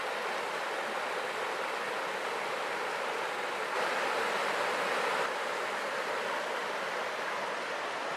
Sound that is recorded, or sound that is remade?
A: recorded